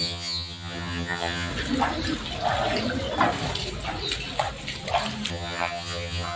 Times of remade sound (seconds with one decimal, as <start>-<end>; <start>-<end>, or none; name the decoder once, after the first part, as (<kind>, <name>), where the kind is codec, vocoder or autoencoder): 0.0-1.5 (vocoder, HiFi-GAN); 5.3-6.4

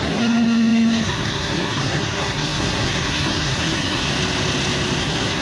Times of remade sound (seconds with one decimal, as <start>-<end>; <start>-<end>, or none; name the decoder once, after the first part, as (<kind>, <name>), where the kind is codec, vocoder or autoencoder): 0.0-4.1 (codec, SNAC); 5.0-5.4

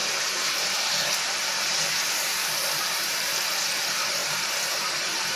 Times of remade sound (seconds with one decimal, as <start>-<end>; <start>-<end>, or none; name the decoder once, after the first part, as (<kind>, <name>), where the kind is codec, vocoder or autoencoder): 0.0-5.4 (vocoder, BigVGAN v2)

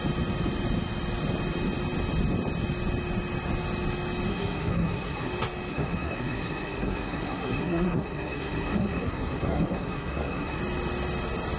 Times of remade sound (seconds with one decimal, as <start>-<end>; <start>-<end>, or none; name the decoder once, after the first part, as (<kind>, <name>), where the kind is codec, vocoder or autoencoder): 4.3-5.3 (codec, SNAC); 5.7-10.6

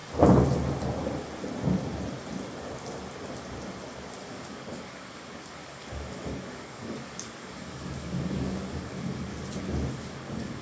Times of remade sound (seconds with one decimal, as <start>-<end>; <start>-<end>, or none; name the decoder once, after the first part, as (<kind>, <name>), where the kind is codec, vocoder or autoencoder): 4.3-9.3 (codec, DAC); 9.9-10.6

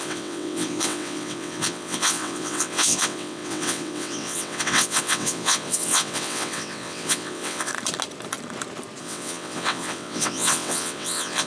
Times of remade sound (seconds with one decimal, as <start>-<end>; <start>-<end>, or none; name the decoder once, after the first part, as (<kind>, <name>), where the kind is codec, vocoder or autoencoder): 0.0-7.7 (vocoder, WaveNeXt); 9.0-11.5

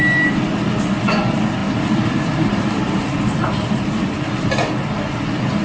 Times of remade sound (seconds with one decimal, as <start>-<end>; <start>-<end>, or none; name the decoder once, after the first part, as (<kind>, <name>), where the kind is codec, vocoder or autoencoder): 1.6-3.8 (vocoder, BigVGAN v2)